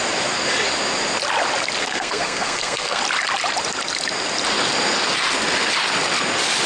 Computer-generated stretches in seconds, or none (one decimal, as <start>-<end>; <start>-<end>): 1.8-3.0